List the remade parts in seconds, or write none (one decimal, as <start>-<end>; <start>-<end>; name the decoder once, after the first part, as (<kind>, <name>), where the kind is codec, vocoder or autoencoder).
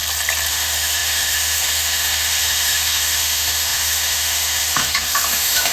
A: 0.5-5.7 (autoencoder, DAC-VAE)